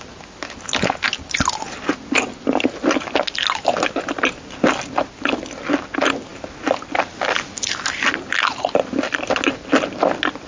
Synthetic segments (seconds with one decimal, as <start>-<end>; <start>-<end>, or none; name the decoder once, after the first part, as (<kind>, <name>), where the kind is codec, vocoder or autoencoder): none